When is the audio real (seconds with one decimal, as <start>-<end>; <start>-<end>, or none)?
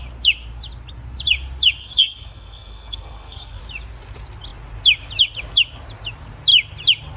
0.0-1.8; 3.6-7.2